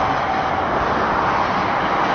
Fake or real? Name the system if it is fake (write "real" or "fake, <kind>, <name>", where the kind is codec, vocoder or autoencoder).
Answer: real